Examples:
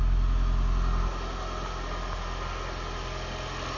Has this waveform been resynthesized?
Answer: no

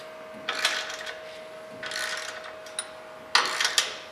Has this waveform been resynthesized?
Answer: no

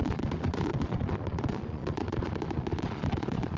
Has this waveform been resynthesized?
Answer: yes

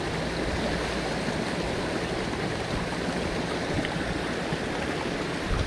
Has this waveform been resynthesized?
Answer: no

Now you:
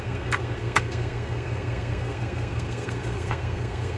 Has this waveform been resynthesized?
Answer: yes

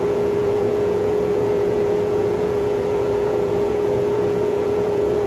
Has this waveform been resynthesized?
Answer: yes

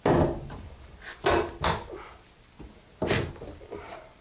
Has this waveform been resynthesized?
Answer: no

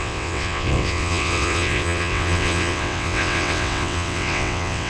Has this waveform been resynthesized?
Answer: yes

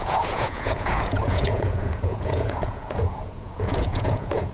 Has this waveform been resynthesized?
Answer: yes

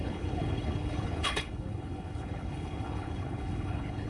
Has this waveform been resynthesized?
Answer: yes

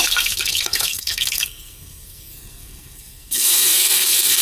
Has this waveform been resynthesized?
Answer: yes